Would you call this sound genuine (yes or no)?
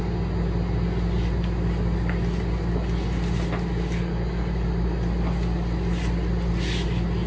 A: yes